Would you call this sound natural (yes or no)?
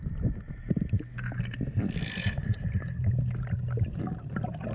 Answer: yes